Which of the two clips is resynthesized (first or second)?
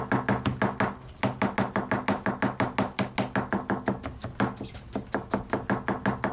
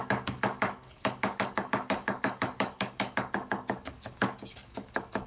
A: second